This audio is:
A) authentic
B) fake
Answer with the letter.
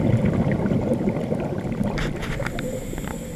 A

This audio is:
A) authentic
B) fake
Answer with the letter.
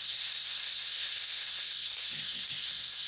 B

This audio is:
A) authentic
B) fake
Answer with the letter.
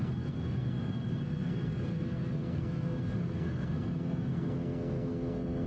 B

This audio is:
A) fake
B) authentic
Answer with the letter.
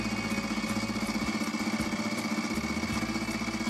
B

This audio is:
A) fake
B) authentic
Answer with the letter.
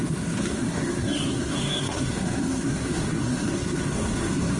A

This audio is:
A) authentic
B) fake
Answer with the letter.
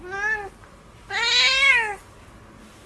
A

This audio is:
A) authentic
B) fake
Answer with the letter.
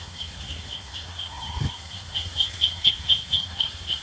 B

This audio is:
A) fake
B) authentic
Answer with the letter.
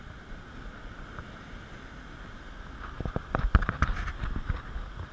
B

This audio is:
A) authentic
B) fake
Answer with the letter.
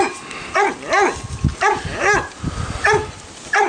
A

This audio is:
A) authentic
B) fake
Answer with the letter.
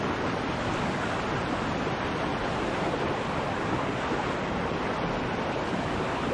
A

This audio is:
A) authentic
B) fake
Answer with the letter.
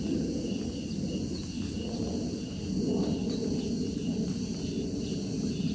A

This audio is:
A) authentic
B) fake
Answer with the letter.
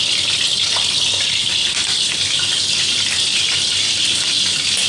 A